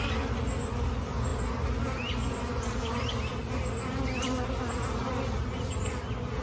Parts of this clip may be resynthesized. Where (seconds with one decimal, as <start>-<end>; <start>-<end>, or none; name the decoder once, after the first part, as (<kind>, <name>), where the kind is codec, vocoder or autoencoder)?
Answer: none